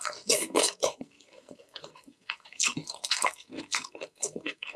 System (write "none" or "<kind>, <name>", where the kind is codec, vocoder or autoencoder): codec, SNAC